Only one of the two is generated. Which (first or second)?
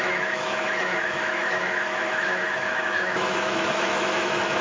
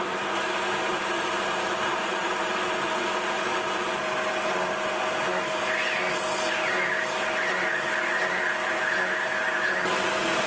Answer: first